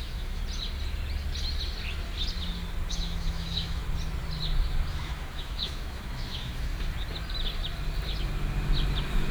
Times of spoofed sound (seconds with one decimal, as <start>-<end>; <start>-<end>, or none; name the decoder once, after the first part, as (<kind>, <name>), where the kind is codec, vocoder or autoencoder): 0.0-0.4 (autoencoder, DAC-VAE); 2.9-3.8; 4.9-6.7